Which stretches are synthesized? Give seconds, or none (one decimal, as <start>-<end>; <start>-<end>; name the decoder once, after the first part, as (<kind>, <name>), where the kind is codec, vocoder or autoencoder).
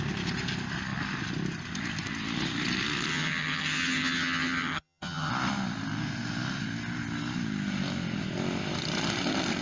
3.1-5.3 (vocoder, HiFi-GAN)